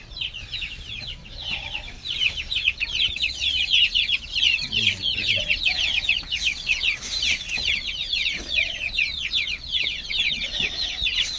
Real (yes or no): no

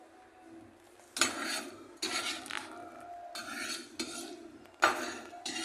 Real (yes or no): yes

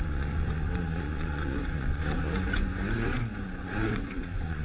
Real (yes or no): no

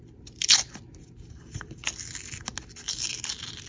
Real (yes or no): yes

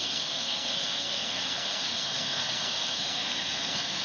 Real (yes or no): no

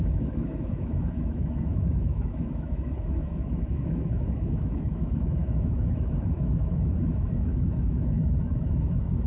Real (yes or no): no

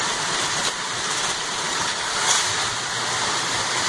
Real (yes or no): no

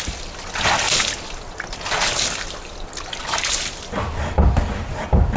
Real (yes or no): yes